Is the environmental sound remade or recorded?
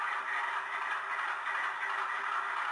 recorded